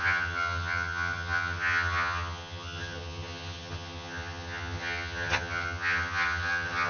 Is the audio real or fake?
fake